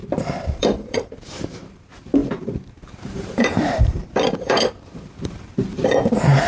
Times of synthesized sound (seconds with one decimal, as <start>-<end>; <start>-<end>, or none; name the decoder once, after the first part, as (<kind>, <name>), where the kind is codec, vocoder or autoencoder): 0.6-6.5 (vocoder, BigVGAN v2)